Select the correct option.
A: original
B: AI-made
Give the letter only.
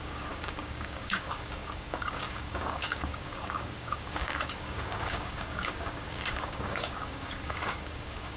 B